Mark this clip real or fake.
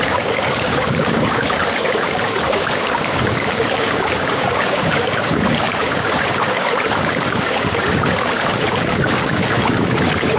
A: fake